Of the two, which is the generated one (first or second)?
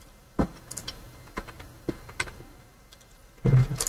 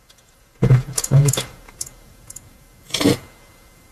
second